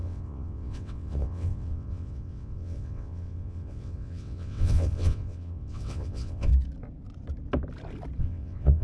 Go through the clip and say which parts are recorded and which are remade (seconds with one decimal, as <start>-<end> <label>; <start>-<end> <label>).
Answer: 0.0-6.5 remade; 6.5-8.2 recorded; 8.2-8.8 remade